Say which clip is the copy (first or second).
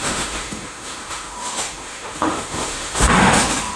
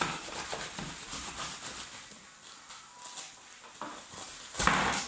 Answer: first